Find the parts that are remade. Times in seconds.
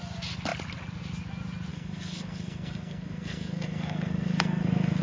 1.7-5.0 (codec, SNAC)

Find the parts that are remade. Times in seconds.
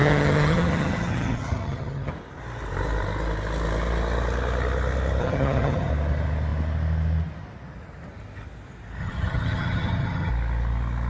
0.0-2.1 (vocoder, HiFi-GAN); 5.2-5.9; 9.0-10.3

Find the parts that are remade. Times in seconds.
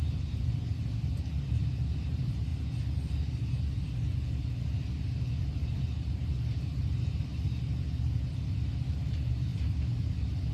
0.0-2.5 (vocoder, BigVGAN v2); 5.7-7.3; 8.7-9.5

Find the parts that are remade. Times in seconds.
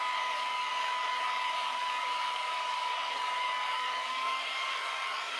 0.0-5.4 (codec, DAC)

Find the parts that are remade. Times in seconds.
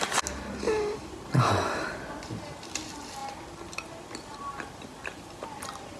none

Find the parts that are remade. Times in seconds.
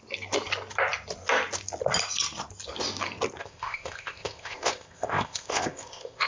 3.4-6.3 (codec, ZipCodec)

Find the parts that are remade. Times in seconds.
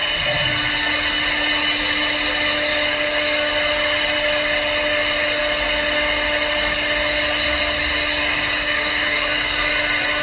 2.7-3.5 (codec, DAC); 8.2-9.7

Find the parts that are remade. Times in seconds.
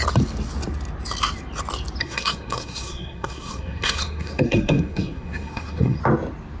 2.0-6.0 (codec, SNAC)